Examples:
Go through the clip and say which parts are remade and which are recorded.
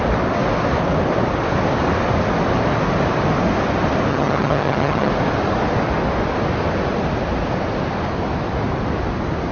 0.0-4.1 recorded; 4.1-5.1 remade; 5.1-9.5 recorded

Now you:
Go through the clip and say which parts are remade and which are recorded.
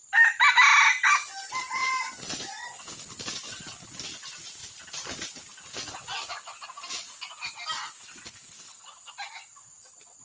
0.0-10.2 recorded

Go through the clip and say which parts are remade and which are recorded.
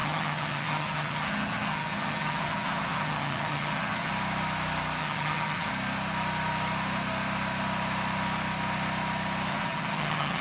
0.0-4.1 remade; 4.1-5.0 recorded; 5.0-5.7 remade; 5.7-9.5 recorded; 9.5-10.4 remade